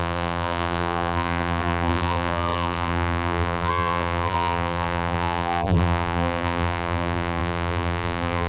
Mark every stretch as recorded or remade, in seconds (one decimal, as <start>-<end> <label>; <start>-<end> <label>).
0.0-8.5 remade